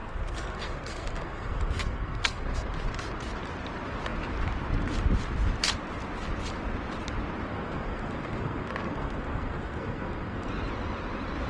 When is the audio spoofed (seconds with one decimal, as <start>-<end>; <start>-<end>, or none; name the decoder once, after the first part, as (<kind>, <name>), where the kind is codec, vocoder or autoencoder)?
0.0-2.7 (codec, SNAC); 7.5-10.5